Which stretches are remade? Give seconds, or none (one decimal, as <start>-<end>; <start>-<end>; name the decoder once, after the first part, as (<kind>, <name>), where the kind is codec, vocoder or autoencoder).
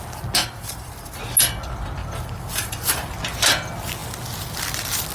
0.4-1.2 (vocoder, BigVGAN v2); 2.0-3.1